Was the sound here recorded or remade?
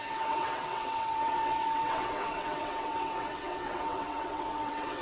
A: remade